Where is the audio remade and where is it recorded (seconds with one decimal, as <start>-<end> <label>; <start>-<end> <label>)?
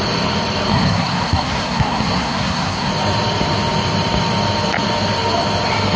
0.0-0.7 recorded; 0.7-2.9 remade; 2.9-6.0 recorded